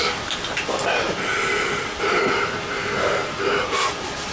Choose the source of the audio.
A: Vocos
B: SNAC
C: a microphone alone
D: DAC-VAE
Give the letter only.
C